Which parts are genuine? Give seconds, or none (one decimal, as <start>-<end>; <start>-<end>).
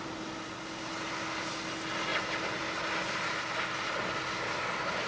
0.0-5.1